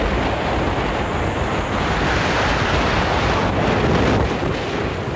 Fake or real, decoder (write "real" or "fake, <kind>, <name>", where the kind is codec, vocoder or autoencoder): real